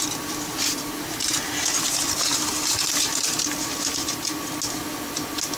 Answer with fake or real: real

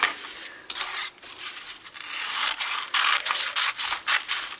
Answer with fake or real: real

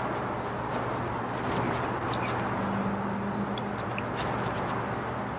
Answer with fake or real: real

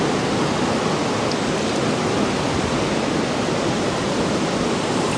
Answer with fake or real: real